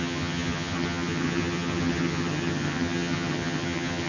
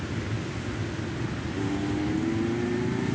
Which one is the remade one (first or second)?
first